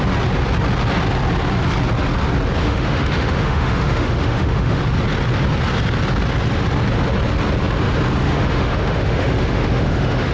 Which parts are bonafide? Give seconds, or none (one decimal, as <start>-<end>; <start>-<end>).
0.0-2.6; 4.8-8.2